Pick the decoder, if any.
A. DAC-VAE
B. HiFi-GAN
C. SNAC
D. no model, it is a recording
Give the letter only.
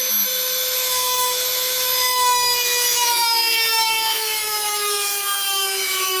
A